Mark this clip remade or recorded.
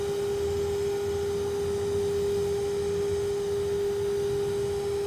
recorded